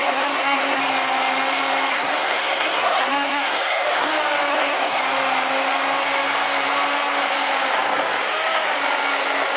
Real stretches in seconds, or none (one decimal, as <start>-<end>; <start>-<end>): 0.8-1.9; 4.1-4.5; 5.0-9.6